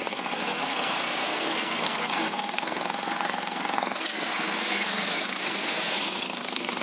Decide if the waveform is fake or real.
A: fake